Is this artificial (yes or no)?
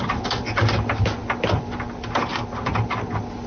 no